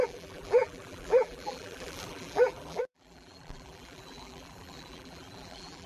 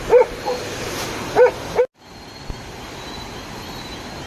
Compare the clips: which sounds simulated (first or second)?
first